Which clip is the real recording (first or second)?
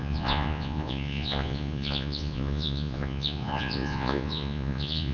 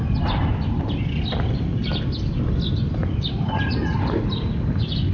second